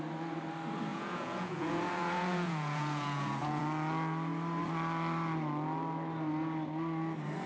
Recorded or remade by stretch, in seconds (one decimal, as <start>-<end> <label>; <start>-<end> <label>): 0.0-0.9 recorded; 0.9-3.6 remade; 3.6-7.5 recorded